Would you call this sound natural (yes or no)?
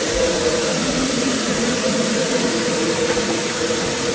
no